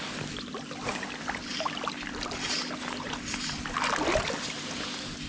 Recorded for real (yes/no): yes